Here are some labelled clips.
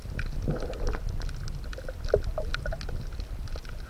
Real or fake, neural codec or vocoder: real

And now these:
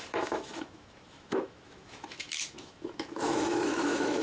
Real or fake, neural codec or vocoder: fake, autoencoder, DAC-VAE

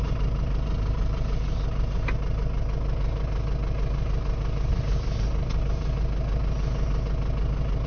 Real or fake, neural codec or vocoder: real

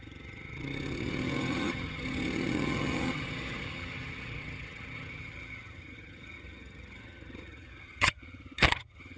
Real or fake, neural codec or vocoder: fake, vocoder, HiFi-GAN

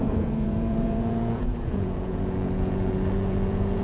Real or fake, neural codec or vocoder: fake, vocoder, Vocos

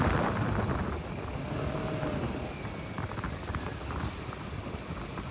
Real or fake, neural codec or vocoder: real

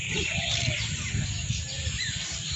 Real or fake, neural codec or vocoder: real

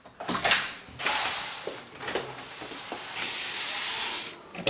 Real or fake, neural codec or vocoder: real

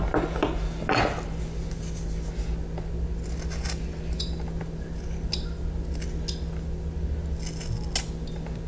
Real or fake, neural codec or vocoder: real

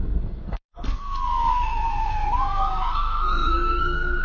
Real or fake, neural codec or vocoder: fake, codec, SNAC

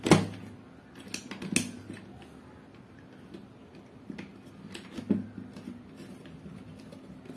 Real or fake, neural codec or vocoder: real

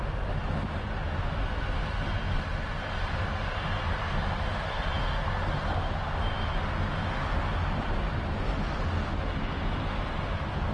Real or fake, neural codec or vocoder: real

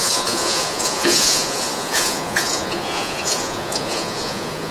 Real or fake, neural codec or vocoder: fake, vocoder, Vocos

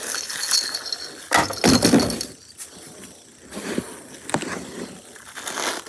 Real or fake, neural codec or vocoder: real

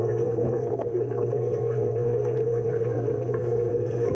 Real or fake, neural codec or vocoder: fake, codec, SNAC